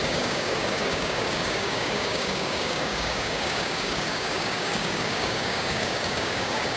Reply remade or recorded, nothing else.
remade